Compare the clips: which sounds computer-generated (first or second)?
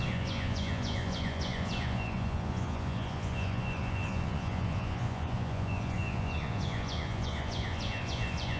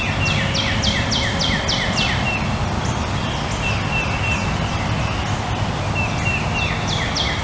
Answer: first